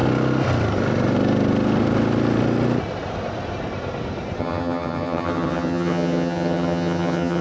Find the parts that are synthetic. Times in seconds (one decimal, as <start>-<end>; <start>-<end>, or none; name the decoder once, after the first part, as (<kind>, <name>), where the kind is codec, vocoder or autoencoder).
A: 4.4-7.4 (vocoder, HiFi-GAN)